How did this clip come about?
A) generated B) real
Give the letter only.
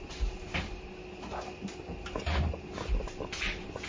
B